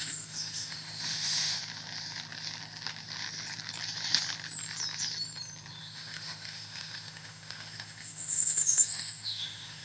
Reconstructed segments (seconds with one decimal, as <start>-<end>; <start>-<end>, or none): 0.0-1.6; 5.8-9.8